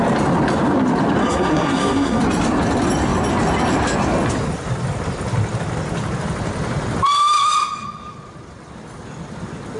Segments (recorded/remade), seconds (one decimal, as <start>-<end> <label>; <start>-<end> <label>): 0.0-1.2 recorded; 1.2-2.2 remade; 2.2-9.8 recorded